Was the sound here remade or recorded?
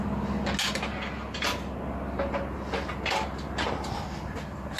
recorded